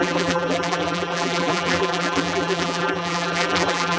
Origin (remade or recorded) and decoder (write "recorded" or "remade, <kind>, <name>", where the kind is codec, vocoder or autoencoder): remade, vocoder, BigVGAN v2